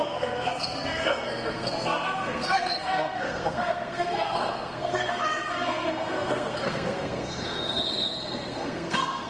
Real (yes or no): no